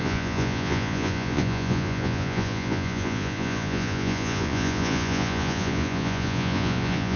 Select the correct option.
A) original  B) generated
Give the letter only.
B